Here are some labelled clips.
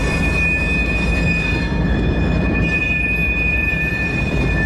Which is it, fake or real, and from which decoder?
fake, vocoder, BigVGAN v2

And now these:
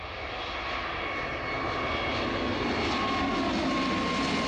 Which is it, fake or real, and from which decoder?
real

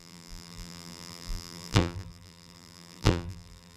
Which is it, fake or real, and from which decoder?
fake, vocoder, BigVGAN v2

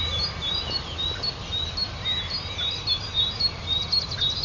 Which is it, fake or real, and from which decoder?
real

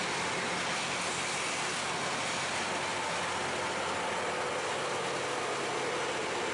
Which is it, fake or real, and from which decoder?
real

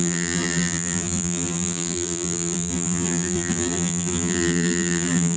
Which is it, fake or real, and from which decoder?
fake, vocoder, BigVGAN v2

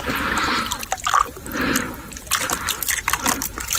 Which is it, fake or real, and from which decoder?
real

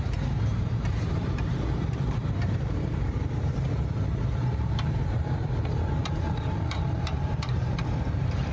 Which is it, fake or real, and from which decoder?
fake, vocoder, BigVGAN v2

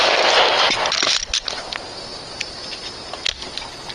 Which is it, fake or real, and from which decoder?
real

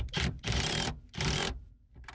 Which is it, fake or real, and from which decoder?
fake, vocoder, BigVGAN v2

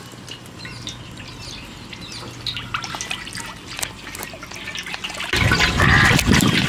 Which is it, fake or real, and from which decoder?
real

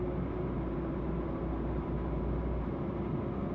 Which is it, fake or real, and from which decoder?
fake, vocoder, BigVGAN v2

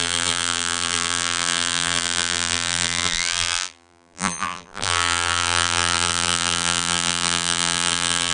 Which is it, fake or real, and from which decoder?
fake, vocoder, BigVGAN v2